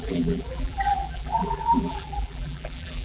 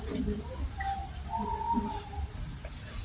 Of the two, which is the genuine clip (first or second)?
second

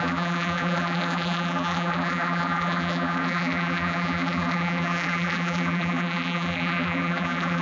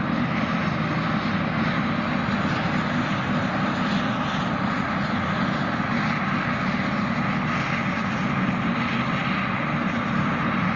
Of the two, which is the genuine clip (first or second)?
second